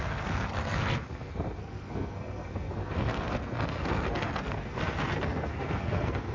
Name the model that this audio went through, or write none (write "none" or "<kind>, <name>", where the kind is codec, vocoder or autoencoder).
codec, SNAC